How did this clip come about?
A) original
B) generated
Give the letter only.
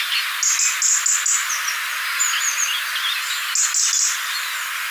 A